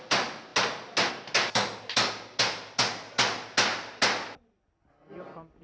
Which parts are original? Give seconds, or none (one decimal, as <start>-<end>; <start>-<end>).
0.0-5.6